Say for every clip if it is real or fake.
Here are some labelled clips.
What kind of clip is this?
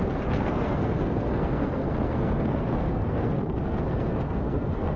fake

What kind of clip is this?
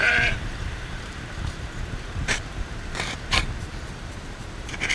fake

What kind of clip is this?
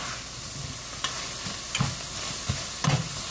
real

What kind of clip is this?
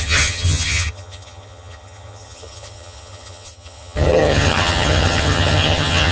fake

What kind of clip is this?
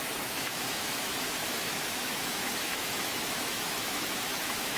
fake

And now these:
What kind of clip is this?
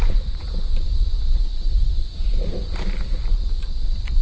real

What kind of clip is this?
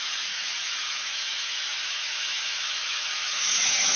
fake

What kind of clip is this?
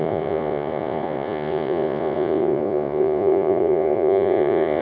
fake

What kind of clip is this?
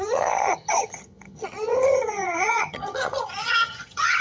fake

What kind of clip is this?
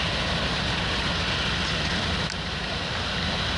real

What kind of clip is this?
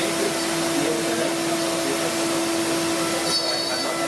real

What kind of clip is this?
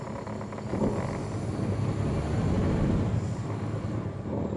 real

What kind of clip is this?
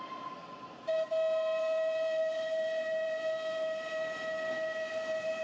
real